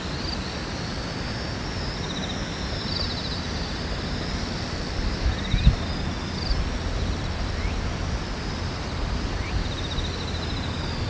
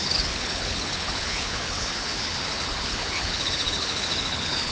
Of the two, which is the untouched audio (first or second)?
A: first